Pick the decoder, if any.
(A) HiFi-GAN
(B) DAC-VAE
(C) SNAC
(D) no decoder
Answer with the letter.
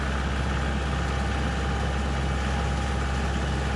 D